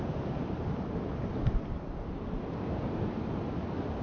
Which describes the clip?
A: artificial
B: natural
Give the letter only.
B